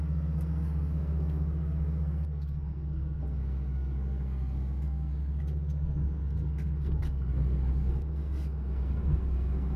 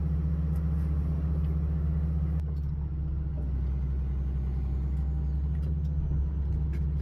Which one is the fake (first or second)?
first